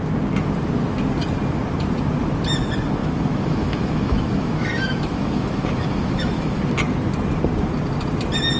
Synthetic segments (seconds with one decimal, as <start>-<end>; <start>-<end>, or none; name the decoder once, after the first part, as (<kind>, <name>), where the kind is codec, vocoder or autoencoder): 3.0-6.6 (autoencoder, DAC-VAE)